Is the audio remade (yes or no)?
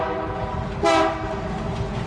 no